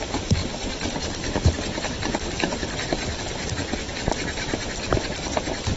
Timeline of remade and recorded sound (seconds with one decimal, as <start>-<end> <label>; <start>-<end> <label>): 0.0-5.8 recorded

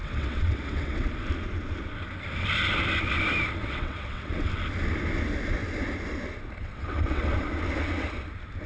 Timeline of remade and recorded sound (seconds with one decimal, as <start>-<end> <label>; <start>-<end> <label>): 0.0-1.1 remade; 1.1-3.6 recorded; 3.6-4.5 remade; 4.5-6.6 recorded; 6.6-7.3 remade; 7.3-8.7 recorded

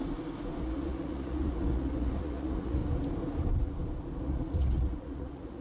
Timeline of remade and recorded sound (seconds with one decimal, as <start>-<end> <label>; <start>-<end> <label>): 0.0-0.6 recorded; 0.6-2.8 remade; 2.8-4.2 recorded; 4.2-5.6 remade

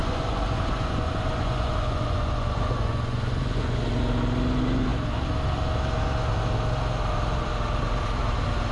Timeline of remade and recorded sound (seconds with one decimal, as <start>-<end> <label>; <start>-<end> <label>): 0.0-3.8 remade; 3.8-8.7 recorded

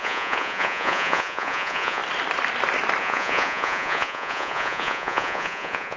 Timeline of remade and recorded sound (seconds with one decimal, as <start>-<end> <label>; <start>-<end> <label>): 0.0-2.0 remade; 2.0-3.0 recorded; 3.0-6.0 remade

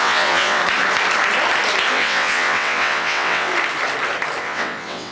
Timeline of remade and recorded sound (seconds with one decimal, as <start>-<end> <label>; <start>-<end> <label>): 0.0-0.6 remade; 0.6-1.9 recorded; 1.9-3.5 remade; 3.5-4.4 recorded; 4.4-5.1 remade

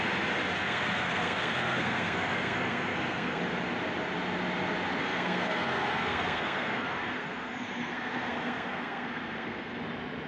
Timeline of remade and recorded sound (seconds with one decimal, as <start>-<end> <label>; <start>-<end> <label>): 0.0-0.6 recorded; 0.6-3.4 remade; 3.4-5.0 recorded; 5.0-9.8 remade; 9.8-10.3 recorded

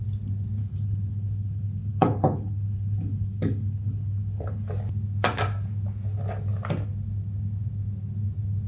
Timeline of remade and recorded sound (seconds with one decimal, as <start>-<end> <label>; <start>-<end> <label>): 0.0-0.6 recorded; 0.6-4.7 remade; 4.7-8.7 recorded